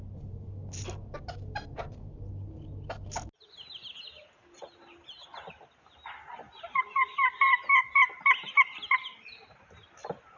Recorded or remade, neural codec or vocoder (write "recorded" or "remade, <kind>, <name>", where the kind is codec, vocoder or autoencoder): recorded